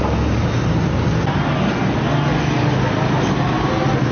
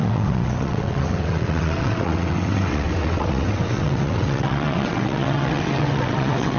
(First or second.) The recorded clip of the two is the first